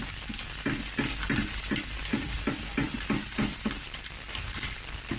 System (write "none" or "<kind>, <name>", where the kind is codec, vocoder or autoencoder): none